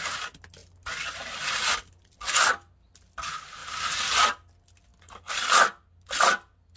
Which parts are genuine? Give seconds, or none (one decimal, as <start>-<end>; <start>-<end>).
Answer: 0.0-6.8